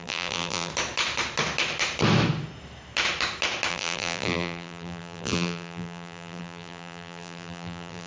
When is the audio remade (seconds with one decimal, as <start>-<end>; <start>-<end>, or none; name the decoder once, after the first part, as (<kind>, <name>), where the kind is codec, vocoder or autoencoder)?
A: 0.0-0.7 (vocoder, BigVGAN v2); 3.7-8.1